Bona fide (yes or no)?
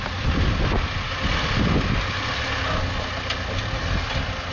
yes